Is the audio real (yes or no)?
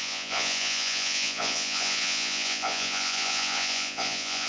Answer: no